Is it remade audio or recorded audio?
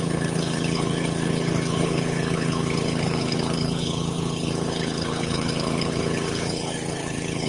remade